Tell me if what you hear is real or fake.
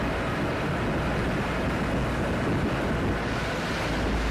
real